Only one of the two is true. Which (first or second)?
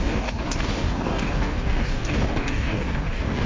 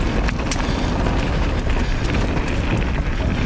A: second